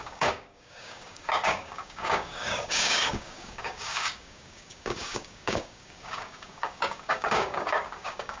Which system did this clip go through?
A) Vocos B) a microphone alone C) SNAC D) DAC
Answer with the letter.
D